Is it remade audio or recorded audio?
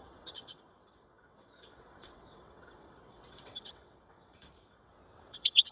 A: remade